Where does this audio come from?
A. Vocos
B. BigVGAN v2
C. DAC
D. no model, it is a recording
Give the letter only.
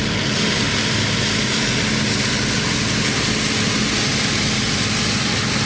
D